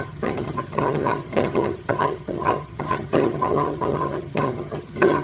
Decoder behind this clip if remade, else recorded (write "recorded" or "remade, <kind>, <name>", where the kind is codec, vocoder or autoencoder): remade, vocoder, HiFi-GAN